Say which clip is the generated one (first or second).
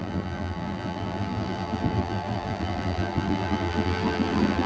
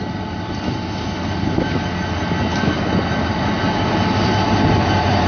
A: first